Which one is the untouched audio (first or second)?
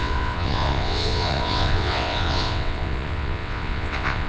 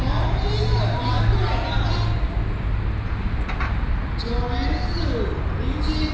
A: second